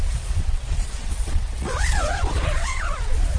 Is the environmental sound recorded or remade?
remade